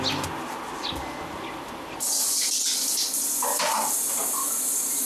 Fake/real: real